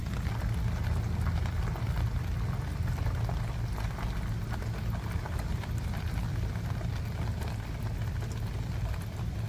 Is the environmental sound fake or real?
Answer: real